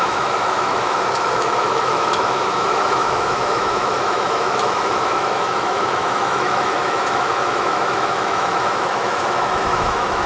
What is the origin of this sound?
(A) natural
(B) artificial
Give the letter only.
B